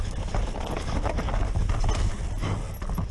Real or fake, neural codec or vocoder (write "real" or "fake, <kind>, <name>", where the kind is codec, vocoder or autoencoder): real